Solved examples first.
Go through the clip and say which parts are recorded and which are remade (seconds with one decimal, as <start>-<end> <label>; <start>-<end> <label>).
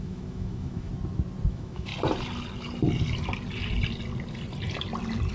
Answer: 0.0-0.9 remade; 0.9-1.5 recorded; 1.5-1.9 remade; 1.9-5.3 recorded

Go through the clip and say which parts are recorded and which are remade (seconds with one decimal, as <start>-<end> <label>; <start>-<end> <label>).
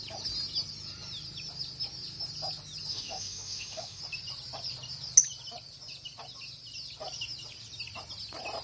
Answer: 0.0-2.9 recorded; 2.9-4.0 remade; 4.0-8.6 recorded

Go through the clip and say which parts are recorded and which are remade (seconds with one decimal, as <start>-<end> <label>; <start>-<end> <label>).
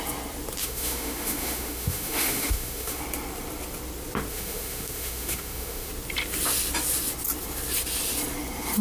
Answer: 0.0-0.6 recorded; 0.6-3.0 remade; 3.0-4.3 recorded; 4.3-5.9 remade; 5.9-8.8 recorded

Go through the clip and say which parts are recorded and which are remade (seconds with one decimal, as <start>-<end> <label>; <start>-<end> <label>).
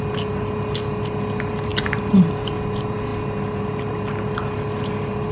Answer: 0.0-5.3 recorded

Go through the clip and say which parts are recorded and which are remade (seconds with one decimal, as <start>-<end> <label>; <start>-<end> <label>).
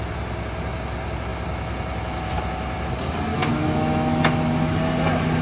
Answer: 0.0-3.3 recorded; 3.3-4.5 remade; 4.5-5.4 recorded